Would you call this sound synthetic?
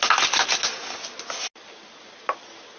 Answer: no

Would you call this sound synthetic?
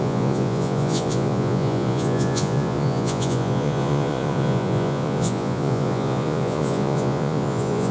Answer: yes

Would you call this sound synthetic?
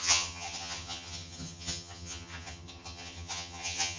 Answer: yes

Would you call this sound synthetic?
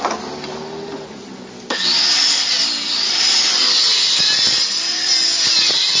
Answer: no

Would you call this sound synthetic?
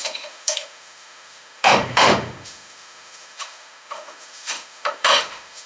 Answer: yes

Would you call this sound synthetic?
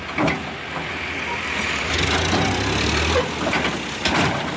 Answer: no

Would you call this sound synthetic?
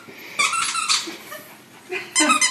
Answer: no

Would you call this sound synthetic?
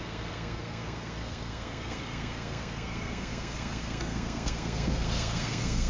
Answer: yes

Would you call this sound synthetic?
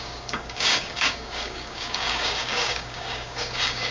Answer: yes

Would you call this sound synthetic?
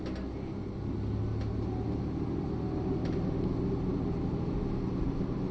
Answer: no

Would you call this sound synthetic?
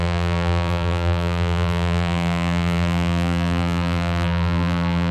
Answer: yes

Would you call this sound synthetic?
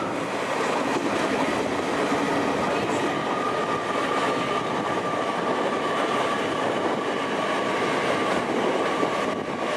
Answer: no